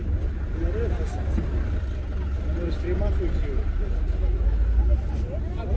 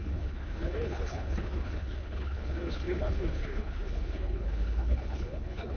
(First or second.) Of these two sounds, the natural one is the first